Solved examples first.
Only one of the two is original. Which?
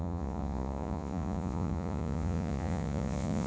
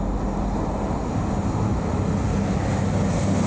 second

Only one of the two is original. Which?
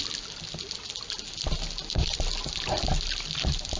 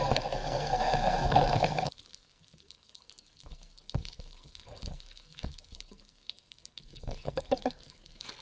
first